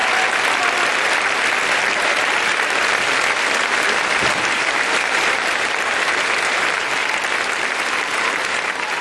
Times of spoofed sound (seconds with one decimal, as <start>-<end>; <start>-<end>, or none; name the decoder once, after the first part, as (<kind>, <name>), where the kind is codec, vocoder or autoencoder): 4.1-7.0 (vocoder, BigVGAN v2); 7.9-9.0